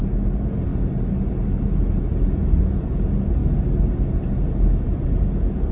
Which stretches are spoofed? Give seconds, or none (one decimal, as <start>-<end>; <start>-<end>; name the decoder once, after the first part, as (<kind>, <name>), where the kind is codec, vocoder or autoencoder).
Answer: none

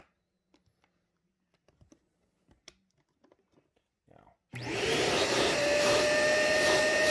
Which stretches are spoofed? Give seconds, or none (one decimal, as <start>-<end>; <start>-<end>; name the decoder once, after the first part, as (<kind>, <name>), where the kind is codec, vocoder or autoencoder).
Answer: 4.5-7.1 (vocoder, BigVGAN v2)